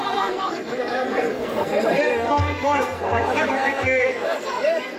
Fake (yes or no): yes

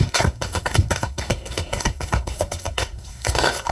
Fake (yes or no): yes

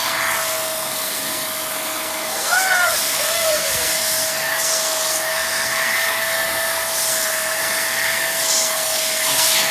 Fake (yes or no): yes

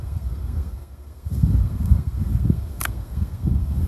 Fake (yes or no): yes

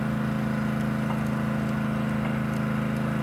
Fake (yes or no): no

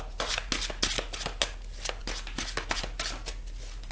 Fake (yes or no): no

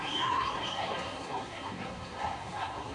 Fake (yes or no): yes